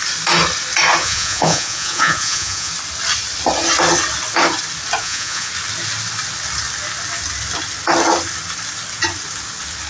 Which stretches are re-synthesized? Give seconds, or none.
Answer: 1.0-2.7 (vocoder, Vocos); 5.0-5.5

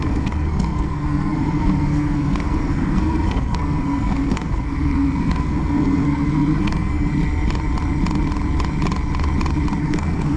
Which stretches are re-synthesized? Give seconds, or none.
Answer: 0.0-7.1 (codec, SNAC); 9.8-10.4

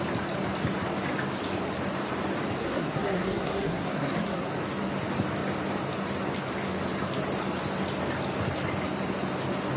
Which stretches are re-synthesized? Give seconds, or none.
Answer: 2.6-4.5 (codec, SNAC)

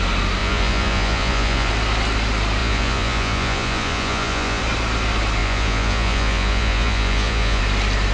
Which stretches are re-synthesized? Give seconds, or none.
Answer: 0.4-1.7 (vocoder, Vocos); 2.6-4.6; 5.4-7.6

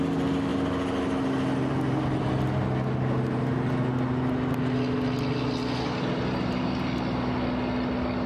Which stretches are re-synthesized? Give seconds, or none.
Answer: none

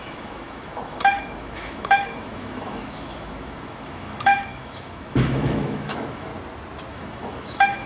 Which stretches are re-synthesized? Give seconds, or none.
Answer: 0.0-6.3 (autoencoder, DAC-VAE); 6.9-7.9

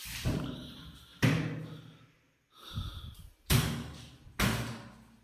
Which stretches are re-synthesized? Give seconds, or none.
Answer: none

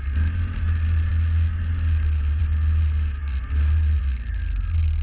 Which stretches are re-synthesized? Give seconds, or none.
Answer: none